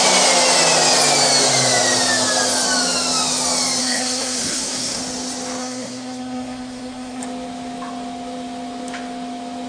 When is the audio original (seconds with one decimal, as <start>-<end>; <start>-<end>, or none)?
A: 0.0-3.8; 5.0-5.6; 7.2-9.7